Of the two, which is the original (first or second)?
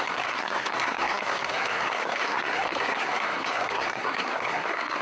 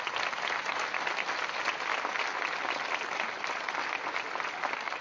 second